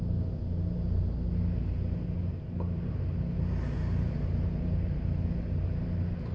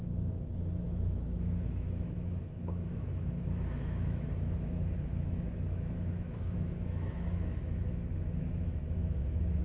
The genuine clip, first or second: first